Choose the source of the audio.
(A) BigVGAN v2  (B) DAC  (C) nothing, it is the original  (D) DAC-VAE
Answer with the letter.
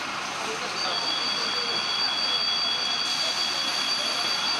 C